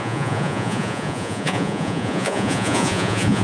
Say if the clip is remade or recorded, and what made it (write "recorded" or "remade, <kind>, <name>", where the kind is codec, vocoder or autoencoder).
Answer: remade, vocoder, Vocos